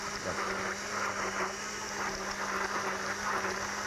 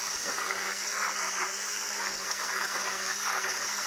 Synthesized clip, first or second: second